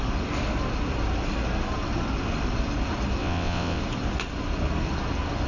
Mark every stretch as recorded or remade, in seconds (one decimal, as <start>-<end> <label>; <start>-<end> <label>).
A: 0.0-3.2 recorded; 3.2-3.8 remade; 3.8-5.5 recorded